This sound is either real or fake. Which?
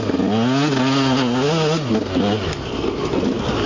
real